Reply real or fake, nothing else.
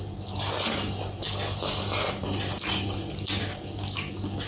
real